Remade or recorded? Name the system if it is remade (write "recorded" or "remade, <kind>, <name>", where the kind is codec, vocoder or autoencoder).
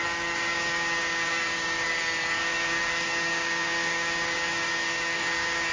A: remade, codec, DAC